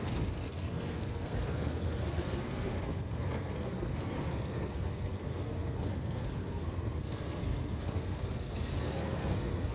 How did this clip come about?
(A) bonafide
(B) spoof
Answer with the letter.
B